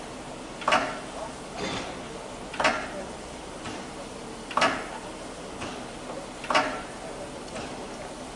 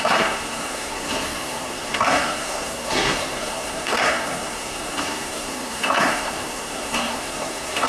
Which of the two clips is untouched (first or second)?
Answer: first